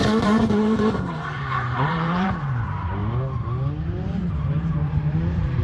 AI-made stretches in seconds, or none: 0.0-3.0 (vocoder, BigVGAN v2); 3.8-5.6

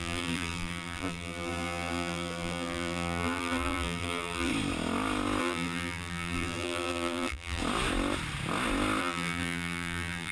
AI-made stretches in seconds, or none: 0.0-4.5 (vocoder, BigVGAN v2); 5.4-7.6; 9.0-10.3

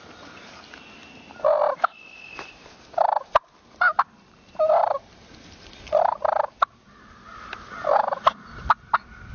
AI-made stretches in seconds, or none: none

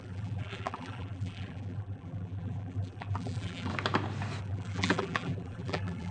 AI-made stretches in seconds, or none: 0.0-3.7 (vocoder, BigVGAN v2); 4.4-6.1

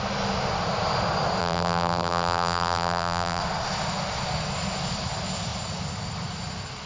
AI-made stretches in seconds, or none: 1.4-3.4 (vocoder, BigVGAN v2)

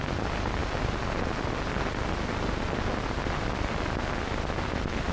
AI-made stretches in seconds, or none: none

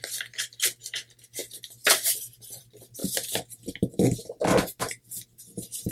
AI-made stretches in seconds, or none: 3.0-5.1 (vocoder, BigVGAN v2)

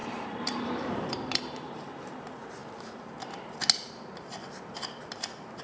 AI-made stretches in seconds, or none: 0.0-1.9 (vocoder, BigVGAN v2)